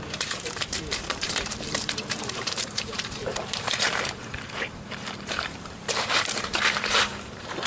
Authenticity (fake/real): fake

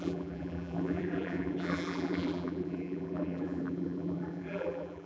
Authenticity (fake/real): fake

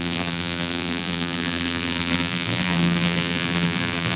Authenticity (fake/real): fake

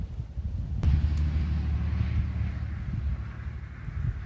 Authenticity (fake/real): real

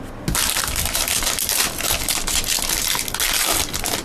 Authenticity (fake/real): real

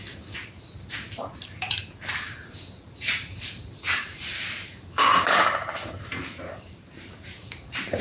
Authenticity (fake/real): fake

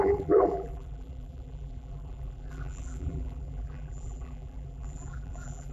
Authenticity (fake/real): fake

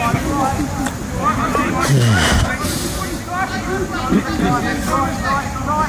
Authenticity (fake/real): real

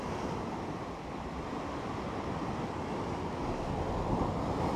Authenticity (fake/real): real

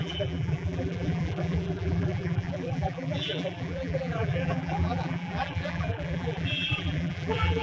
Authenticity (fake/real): fake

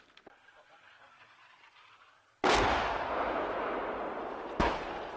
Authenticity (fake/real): fake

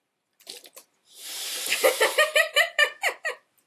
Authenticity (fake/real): fake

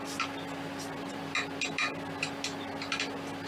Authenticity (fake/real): real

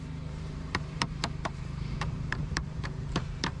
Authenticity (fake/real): fake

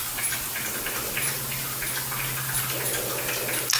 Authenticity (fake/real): real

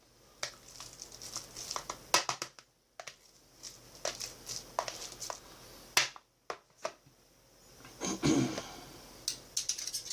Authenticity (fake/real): real